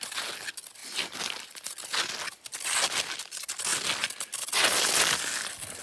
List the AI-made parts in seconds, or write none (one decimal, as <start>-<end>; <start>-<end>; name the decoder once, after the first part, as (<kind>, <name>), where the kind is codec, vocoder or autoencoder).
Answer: none